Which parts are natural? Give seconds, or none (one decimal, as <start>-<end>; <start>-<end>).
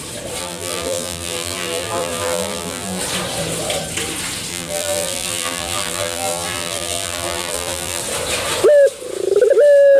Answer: 0.0-0.4; 3.0-4.5; 8.0-10.0